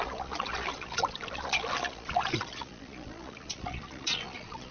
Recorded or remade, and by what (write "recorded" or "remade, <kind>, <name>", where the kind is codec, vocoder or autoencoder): remade, vocoder, Vocos